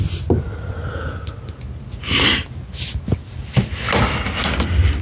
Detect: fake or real real